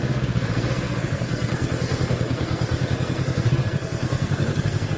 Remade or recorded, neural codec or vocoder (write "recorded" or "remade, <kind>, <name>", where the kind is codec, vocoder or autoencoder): remade, codec, SNAC